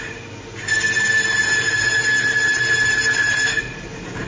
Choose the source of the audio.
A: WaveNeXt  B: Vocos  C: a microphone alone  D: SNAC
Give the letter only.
C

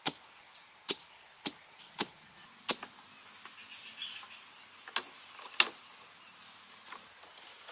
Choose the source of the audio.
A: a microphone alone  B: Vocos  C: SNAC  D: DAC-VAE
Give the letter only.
A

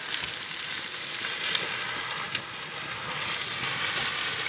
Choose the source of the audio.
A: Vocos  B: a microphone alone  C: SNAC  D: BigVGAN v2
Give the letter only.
B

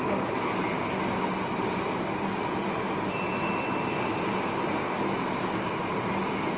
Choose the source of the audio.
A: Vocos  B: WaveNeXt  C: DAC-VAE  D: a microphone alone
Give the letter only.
D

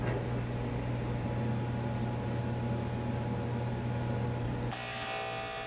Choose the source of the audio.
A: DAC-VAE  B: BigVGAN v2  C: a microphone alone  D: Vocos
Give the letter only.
C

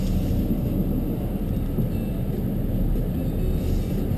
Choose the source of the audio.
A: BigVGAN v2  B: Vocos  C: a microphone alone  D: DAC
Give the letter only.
C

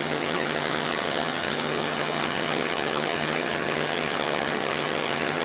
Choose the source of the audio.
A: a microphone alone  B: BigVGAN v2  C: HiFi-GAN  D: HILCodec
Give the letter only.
C